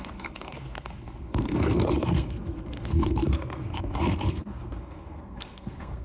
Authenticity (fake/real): fake